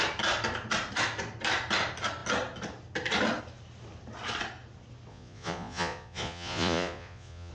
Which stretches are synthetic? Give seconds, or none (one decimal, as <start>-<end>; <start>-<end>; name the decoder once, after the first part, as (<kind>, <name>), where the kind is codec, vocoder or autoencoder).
5.1-7.5 (vocoder, Vocos)